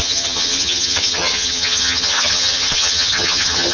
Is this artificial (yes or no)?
yes